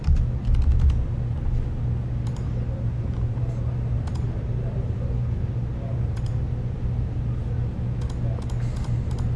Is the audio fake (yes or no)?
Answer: no